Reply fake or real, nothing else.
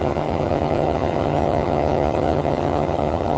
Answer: fake